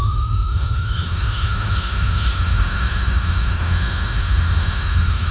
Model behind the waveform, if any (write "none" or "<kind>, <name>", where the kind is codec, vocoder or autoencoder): autoencoder, DAC-VAE